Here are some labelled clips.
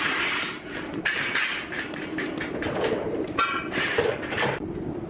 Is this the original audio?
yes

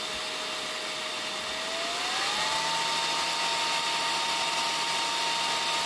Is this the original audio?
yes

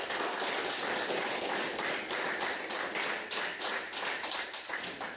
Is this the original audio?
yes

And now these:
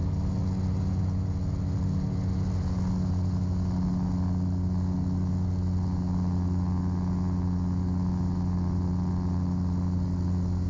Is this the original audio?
yes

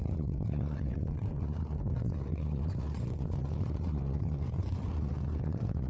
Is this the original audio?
no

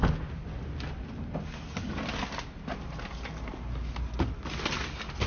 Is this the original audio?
yes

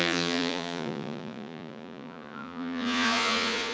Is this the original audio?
no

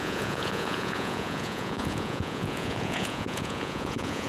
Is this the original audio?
no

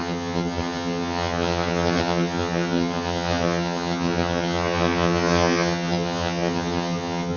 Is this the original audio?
no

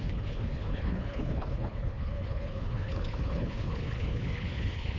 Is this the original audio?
no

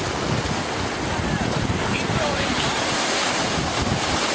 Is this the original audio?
yes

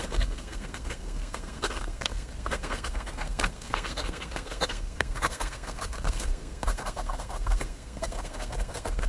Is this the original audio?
no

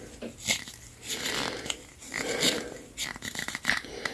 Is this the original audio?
yes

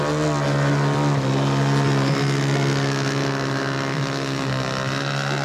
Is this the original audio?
yes